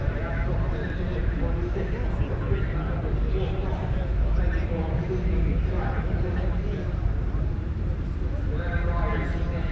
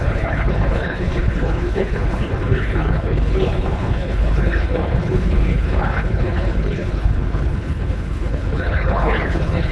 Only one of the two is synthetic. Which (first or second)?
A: second